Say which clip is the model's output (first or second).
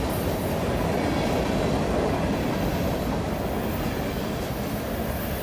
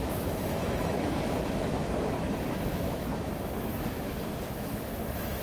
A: second